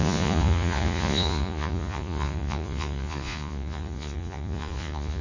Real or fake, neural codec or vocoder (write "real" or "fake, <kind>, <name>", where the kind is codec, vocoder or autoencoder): fake, vocoder, Vocos